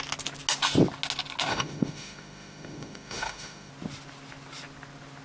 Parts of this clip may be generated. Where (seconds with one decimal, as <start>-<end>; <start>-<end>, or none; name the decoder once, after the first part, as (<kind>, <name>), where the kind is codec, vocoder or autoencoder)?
1.5-3.7 (autoencoder, DAC-VAE)